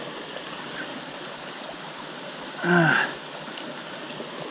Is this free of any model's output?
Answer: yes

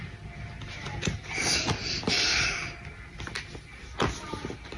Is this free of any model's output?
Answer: yes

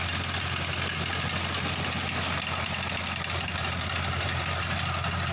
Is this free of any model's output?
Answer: yes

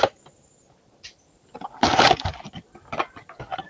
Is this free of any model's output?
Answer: yes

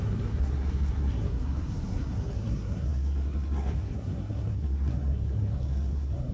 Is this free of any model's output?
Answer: no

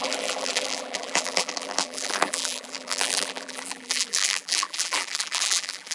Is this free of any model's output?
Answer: no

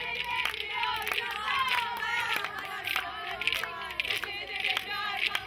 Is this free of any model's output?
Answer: yes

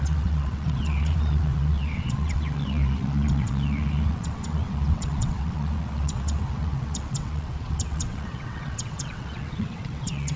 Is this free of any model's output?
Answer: no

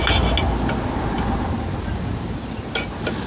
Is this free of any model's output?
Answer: yes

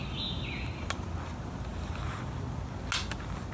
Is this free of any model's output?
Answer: yes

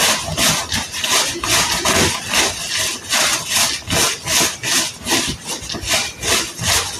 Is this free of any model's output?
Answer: yes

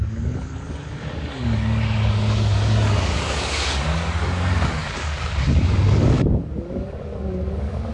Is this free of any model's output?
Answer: no